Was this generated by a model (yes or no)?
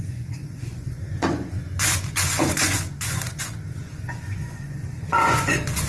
yes